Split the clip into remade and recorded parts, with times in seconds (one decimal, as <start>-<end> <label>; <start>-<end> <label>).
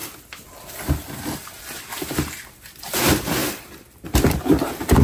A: 0.0-3.4 recorded; 3.4-4.2 remade; 4.2-5.0 recorded